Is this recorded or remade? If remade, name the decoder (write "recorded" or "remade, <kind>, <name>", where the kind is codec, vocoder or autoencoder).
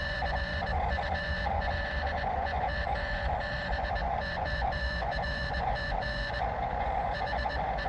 remade, vocoder, Vocos